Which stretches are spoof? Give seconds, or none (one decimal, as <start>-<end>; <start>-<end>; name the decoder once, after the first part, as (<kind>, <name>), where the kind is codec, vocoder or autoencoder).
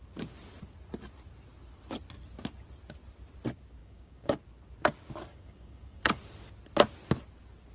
3.8-4.4 (codec, DAC); 5.3-6.2